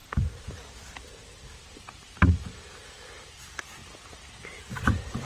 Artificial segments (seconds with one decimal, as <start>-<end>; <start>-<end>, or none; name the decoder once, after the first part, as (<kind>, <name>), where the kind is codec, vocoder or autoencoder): none

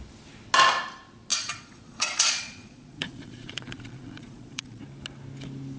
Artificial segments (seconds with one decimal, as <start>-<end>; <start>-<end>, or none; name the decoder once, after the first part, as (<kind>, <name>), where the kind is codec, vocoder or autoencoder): 1.3-4.8 (vocoder, Vocos)

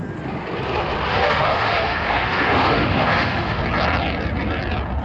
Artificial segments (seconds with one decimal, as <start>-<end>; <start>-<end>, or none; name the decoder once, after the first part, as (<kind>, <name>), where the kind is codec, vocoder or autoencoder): 1.1-3.6 (autoencoder, DAC-VAE)

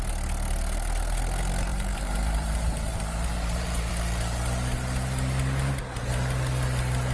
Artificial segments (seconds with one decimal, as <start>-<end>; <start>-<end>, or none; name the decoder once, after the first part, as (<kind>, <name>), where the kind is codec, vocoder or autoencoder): 1.7-3.9 (vocoder, BigVGAN v2)

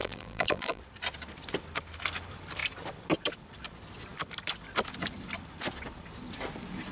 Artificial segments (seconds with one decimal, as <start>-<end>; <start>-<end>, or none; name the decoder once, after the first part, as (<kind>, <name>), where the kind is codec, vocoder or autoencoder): 0.0-0.8 (vocoder, BigVGAN v2)